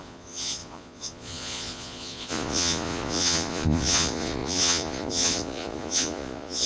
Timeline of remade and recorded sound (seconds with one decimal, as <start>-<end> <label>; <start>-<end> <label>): 0.0-6.7 remade